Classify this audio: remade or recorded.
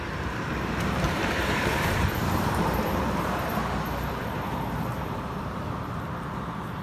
remade